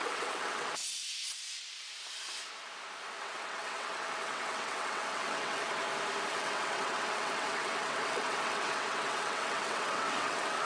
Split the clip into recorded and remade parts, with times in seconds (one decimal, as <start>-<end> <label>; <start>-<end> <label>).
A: 0.0-1.0 remade; 1.0-3.2 recorded; 3.2-5.8 remade; 5.8-6.3 recorded; 6.3-10.7 remade